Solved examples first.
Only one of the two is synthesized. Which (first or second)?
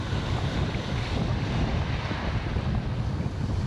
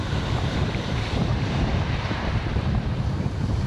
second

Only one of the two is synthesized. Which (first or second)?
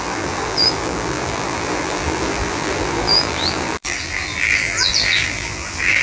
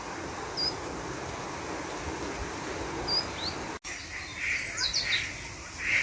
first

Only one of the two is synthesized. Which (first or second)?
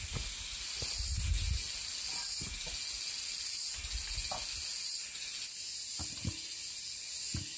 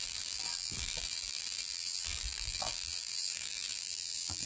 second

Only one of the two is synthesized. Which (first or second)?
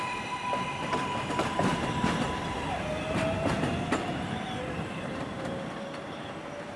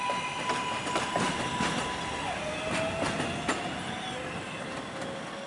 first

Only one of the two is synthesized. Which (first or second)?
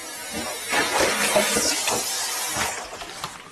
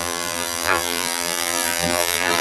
second